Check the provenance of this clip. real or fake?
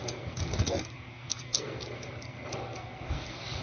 fake